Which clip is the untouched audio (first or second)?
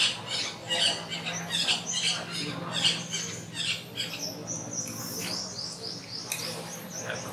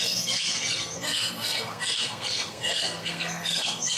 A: first